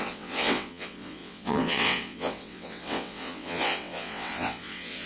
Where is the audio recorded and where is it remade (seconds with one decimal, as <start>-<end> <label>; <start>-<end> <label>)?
0.0-5.1 remade